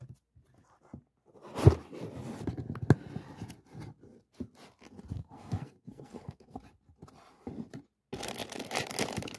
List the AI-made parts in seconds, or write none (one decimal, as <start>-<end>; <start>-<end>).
5.1-6.6